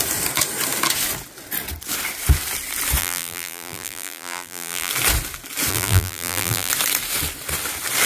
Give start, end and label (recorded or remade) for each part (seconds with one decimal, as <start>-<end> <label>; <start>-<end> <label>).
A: 0.0-3.0 recorded; 3.0-4.9 remade; 4.9-5.7 recorded; 5.7-6.7 remade; 6.7-8.1 recorded